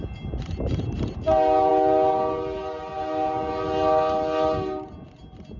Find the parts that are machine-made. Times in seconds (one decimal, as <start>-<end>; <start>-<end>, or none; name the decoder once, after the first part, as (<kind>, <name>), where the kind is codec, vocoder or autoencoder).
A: none